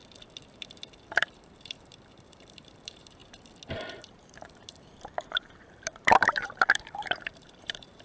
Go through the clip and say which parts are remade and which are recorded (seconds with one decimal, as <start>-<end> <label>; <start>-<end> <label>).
0.0-0.5 recorded; 0.5-3.2 remade; 3.2-4.0 recorded; 4.0-8.0 remade